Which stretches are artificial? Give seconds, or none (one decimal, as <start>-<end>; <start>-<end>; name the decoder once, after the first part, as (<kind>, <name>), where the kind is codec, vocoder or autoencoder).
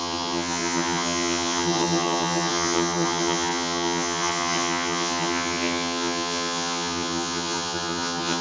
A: 0.0-8.4 (vocoder, HiFi-GAN)